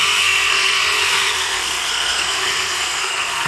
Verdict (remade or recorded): remade